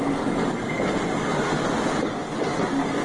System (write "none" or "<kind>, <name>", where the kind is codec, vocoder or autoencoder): none